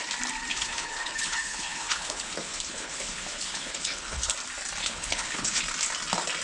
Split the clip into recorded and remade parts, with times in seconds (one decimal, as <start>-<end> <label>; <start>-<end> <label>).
0.0-0.5 recorded; 0.5-4.3 remade; 4.3-4.8 recorded; 4.8-5.6 remade; 5.6-6.4 recorded